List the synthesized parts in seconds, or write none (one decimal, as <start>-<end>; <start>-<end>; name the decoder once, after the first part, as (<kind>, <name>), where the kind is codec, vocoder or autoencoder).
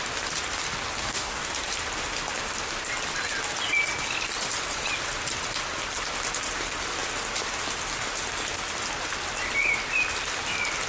1.0-1.5 (codec, DAC)